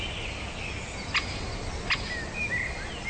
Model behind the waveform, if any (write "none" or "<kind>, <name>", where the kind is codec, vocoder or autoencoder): none